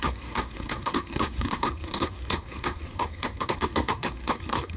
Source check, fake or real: fake